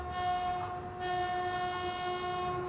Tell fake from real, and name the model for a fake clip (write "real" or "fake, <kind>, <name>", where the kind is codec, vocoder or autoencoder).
real